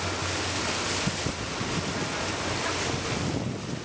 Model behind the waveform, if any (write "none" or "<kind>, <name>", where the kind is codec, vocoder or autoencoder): none